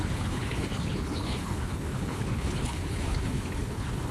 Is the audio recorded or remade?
remade